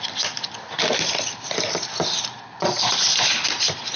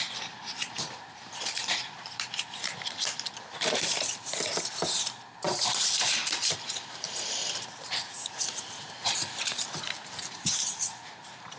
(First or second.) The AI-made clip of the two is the second